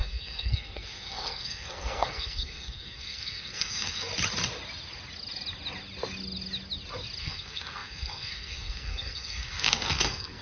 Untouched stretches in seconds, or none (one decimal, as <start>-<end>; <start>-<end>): 4.1-7.2